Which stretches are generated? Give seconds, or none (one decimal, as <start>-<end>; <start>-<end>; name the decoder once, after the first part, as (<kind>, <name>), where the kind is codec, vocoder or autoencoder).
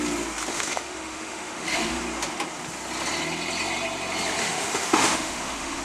0.5-2.0 (autoencoder, DAC-VAE); 4.4-5.8